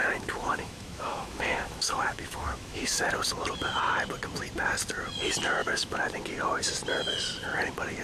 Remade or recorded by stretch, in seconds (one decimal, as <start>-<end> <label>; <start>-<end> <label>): 0.0-3.1 remade; 3.1-5.6 recorded; 5.6-6.1 remade; 6.1-8.0 recorded